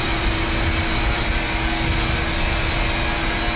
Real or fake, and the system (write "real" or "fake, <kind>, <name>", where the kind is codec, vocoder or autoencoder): real